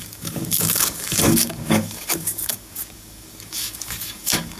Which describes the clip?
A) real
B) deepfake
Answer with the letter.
B